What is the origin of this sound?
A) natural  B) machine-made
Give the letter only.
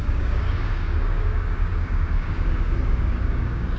B